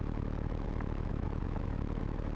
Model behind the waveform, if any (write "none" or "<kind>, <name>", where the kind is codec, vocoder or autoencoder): autoencoder, DAC-VAE